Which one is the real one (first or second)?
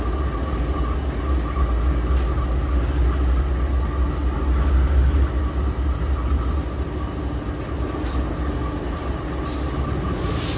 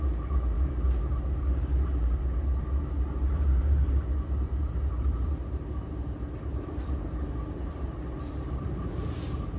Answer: first